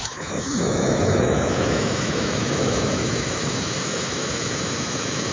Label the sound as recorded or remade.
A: remade